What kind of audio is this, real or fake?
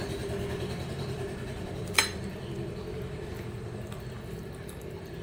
fake